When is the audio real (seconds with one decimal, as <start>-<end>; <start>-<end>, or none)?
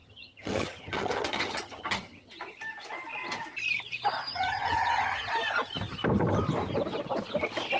2.3-4.3; 5.3-7.8